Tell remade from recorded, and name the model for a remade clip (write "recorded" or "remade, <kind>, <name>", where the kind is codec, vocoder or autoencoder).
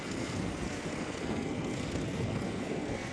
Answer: remade, codec, SNAC